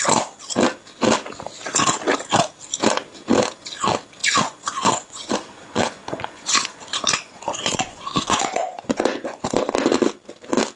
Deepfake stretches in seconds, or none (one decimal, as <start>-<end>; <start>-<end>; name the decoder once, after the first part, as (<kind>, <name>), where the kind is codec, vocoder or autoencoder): 4.2-9.4 (vocoder, Vocos)